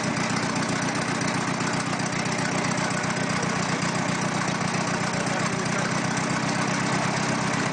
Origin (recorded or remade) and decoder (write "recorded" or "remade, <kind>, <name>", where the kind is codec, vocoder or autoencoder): recorded